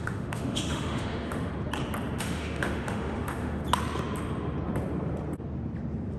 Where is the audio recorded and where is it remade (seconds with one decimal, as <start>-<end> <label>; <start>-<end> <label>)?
0.0-1.5 remade; 1.5-2.2 recorded; 2.2-3.6 remade; 3.6-6.2 recorded